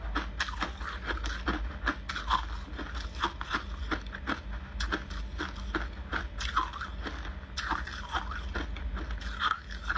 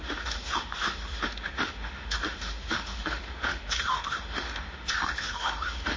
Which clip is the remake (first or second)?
second